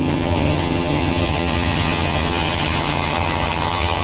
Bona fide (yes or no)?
no